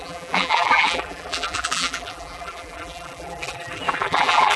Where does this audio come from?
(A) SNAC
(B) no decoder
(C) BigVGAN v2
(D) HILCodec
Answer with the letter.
C